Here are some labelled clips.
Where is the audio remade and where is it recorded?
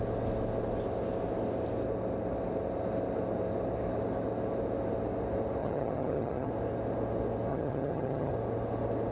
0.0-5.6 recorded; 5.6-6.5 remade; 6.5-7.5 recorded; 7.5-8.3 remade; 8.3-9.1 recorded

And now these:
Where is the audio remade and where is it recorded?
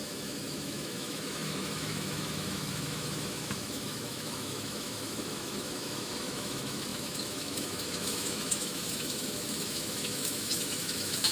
0.0-11.3 remade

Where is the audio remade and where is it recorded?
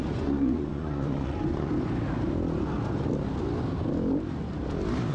0.0-1.7 remade; 1.7-5.1 recorded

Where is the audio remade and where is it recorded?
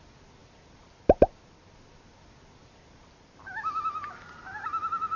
0.0-5.2 recorded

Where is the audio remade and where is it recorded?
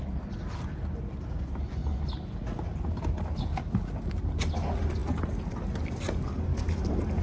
0.0-7.2 recorded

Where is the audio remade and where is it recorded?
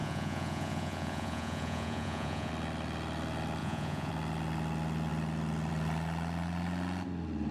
0.0-2.5 remade; 2.5-3.6 recorded; 3.6-4.1 remade; 4.1-7.5 recorded